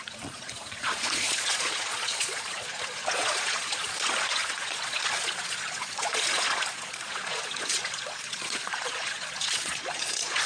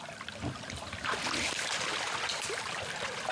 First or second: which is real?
second